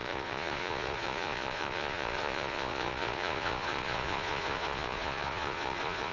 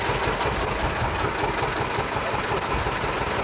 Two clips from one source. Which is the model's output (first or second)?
first